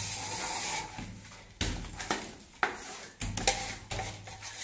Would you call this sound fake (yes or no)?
no